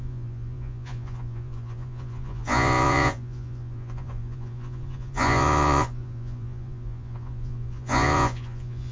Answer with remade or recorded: remade